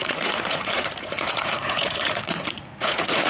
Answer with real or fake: fake